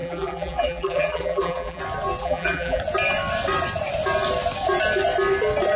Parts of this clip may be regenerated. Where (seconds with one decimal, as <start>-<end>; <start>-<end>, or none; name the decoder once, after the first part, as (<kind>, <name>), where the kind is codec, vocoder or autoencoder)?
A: 0.0-1.8 (vocoder, BigVGAN v2); 2.2-2.8